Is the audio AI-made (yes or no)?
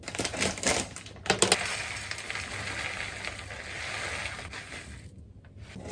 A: no